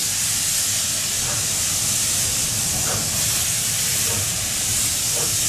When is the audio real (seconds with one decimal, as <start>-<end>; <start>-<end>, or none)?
0.0-3.9; 4.4-5.5